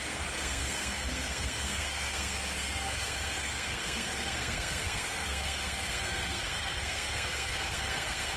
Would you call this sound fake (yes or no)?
yes